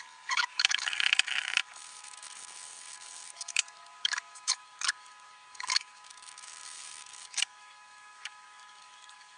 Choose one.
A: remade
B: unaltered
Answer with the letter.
A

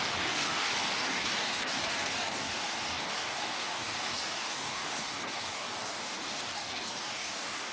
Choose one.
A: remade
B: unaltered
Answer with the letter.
A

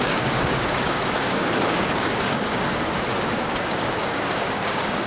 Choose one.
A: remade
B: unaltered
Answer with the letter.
A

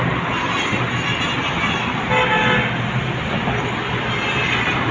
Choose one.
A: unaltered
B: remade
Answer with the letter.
A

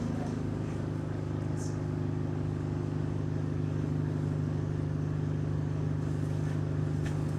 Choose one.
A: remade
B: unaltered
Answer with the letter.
A